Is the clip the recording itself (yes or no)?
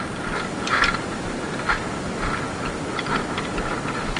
yes